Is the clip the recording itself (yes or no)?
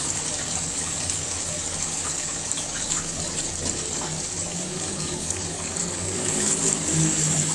no